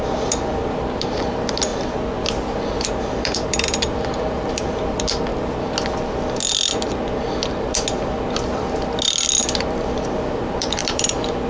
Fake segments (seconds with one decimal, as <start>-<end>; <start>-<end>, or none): 0.0-1.7; 3.0-5.3; 9.4-11.5